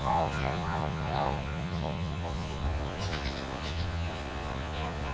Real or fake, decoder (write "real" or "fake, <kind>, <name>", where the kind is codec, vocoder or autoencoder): fake, vocoder, Vocos